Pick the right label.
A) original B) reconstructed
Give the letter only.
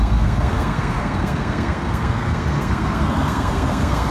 B